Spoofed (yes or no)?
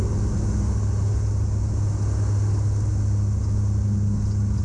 no